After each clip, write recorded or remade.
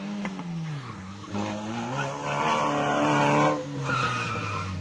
recorded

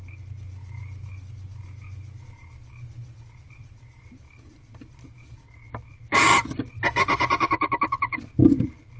recorded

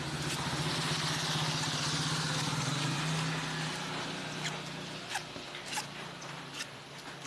recorded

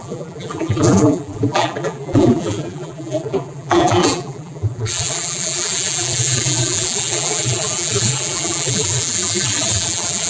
remade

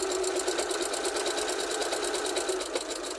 recorded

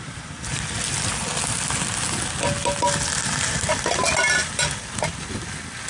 recorded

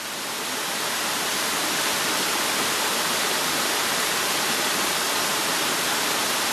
remade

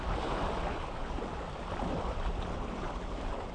recorded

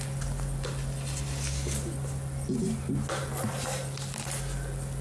recorded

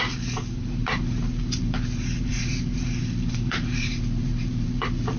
remade